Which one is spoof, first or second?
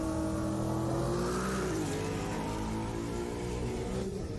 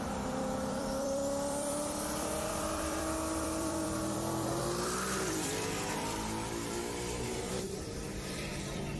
second